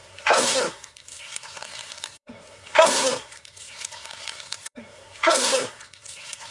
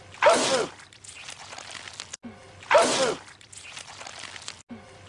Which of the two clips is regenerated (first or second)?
first